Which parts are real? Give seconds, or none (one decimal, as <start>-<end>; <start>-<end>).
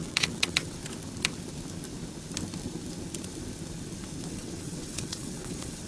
0.8-4.3